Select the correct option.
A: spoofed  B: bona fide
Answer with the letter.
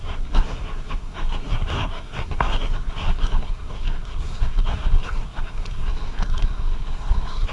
A